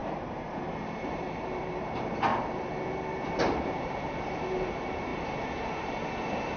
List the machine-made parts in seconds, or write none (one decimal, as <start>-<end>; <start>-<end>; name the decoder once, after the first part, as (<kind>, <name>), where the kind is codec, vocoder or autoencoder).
0.0-2.3 (vocoder, BigVGAN v2); 3.3-6.6